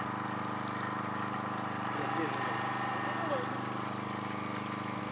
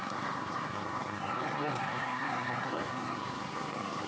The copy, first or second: second